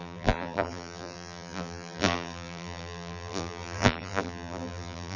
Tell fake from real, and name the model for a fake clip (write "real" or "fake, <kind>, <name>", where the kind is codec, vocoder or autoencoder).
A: fake, vocoder, BigVGAN v2